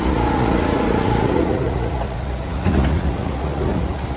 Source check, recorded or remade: remade